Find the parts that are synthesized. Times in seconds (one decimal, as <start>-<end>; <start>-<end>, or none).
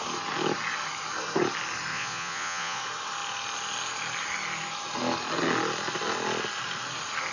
1.9-2.8